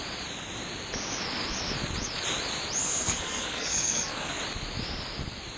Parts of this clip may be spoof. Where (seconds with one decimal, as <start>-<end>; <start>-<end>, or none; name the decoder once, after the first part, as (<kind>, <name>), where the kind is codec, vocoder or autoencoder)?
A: 2.8-4.4 (codec, SNAC)